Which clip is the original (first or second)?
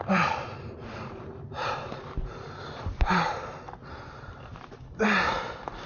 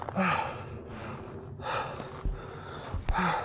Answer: second